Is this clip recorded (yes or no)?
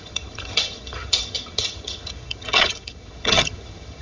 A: no